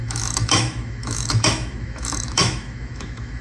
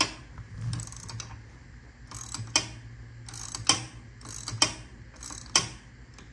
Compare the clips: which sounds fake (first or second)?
first